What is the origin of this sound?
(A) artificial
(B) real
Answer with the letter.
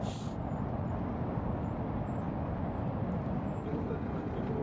B